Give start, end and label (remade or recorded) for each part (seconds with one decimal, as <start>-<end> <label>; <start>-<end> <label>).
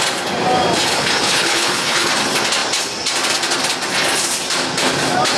0.0-0.9 recorded; 0.9-2.1 remade; 2.1-5.4 recorded